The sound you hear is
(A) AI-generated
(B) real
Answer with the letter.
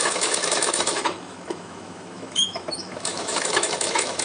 A